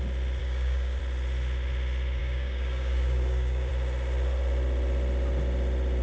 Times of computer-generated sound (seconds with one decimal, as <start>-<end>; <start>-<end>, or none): 0.4-1.0; 2.2-3.7